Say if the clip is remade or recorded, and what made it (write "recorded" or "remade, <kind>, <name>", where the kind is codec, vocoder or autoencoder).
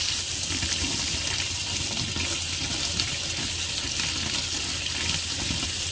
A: recorded